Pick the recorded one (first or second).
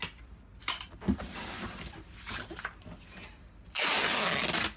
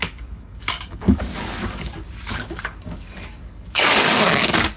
first